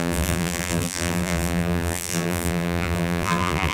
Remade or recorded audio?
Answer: remade